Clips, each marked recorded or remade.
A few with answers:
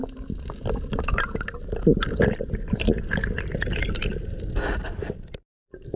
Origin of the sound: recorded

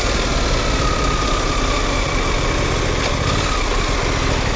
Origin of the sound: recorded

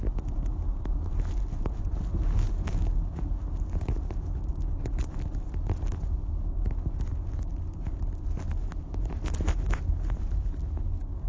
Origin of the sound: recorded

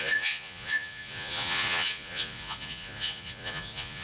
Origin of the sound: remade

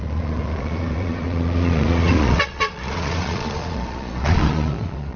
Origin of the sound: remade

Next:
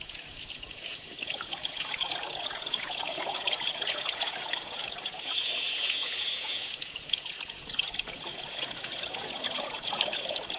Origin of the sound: remade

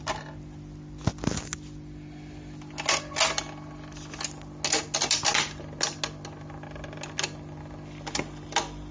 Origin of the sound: recorded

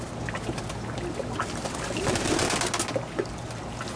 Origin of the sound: recorded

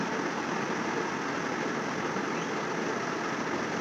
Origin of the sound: recorded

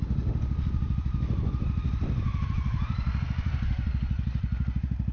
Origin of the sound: recorded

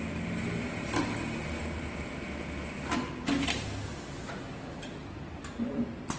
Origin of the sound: recorded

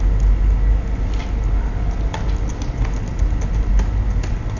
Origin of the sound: recorded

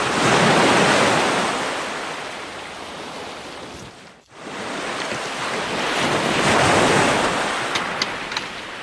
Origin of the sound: recorded